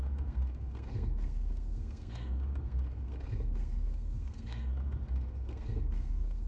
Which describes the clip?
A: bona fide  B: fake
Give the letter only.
B